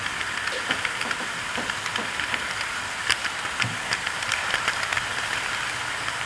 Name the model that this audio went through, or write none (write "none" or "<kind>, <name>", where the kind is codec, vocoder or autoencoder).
vocoder, BigVGAN v2